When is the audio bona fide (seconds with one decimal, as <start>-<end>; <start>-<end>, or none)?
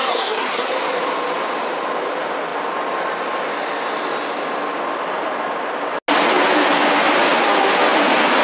0.7-8.4